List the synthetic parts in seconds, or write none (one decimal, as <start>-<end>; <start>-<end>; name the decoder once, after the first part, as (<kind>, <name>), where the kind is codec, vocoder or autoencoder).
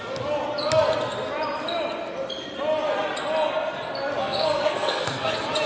4.2-5.3 (codec, SNAC)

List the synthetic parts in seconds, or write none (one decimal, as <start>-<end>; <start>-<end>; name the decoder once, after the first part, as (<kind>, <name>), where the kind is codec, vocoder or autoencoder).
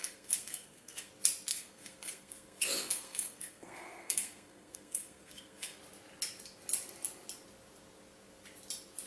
0.0-1.1 (codec, SNAC); 1.5-5.8